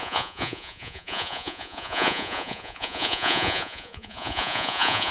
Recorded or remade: remade